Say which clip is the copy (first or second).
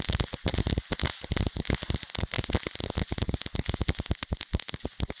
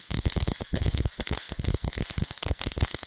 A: second